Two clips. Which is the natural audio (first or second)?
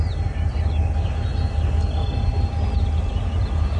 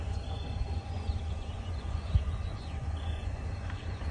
first